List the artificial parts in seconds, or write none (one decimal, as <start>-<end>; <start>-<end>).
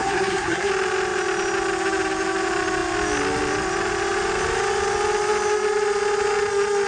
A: 0.0-0.7